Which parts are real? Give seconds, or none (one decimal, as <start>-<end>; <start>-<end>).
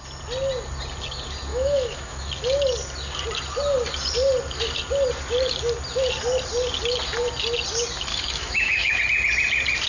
0.0-1.5; 2.3-8.1; 9.0-9.9